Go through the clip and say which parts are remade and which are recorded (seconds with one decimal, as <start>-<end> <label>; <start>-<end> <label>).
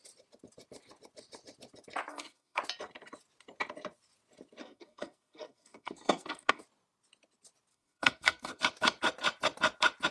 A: 0.0-2.1 recorded; 2.1-2.6 remade; 2.6-4.6 recorded; 4.6-6.6 remade; 6.6-7.7 recorded; 7.7-8.6 remade; 8.6-10.1 recorded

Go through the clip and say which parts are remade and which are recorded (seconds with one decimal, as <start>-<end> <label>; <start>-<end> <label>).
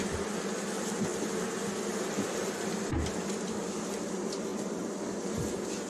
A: 0.0-5.9 recorded